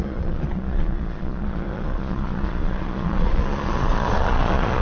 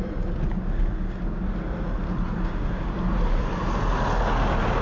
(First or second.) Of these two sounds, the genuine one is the second